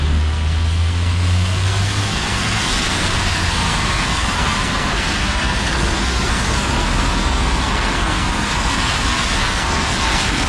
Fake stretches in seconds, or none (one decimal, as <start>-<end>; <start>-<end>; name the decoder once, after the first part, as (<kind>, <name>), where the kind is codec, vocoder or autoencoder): 0.0-10.5 (codec, SNAC)